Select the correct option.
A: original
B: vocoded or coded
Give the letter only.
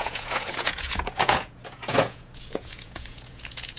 B